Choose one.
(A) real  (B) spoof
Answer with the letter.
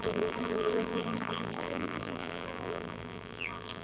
B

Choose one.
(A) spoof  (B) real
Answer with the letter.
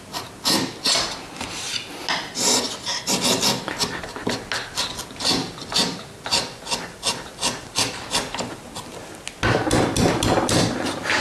B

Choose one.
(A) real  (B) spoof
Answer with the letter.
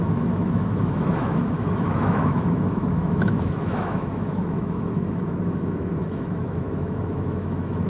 B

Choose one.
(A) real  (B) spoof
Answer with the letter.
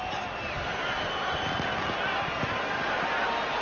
A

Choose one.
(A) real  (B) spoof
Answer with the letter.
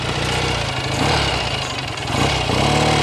A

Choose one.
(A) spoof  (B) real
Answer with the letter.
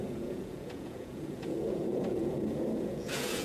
A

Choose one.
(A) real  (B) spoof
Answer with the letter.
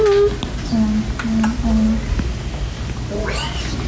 A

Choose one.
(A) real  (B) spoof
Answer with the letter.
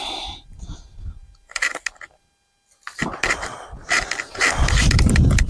A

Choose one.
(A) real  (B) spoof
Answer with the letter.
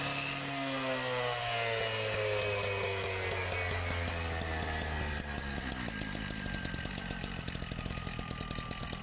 A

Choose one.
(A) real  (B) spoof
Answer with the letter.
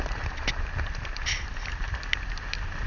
A